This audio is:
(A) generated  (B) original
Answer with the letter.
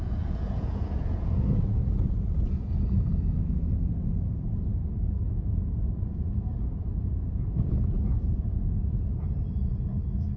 A